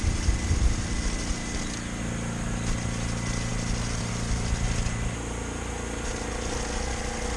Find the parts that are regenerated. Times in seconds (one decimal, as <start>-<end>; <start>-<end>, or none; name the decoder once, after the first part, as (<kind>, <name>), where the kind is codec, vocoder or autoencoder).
none